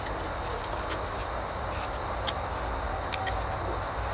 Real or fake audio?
real